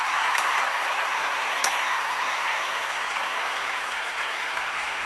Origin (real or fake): fake